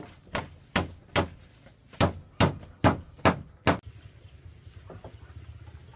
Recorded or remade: recorded